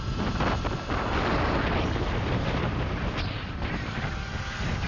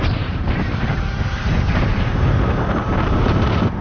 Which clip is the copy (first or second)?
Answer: second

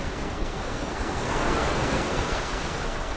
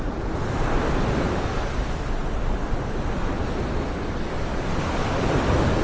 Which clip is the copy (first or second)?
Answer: first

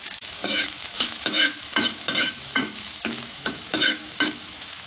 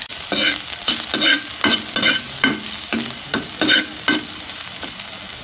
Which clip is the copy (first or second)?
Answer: first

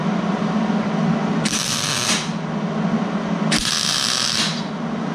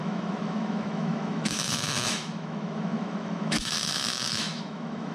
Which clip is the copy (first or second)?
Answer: second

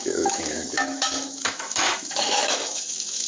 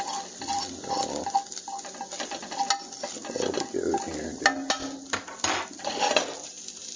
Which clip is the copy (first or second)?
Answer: first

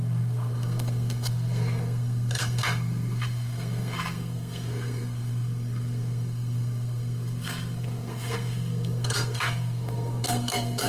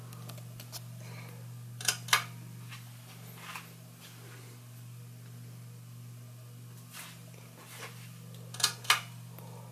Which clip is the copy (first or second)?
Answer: first